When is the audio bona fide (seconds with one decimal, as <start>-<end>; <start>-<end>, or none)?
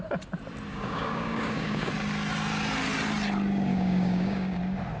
0.0-0.7; 1.9-3.7; 4.6-5.0